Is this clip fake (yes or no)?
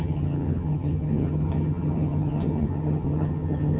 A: yes